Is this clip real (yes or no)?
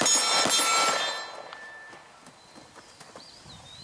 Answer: yes